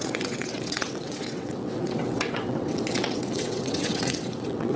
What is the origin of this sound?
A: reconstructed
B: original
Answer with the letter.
A